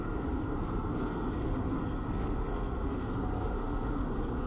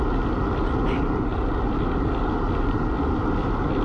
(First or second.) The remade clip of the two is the first